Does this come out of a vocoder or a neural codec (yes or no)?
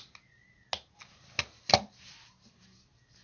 no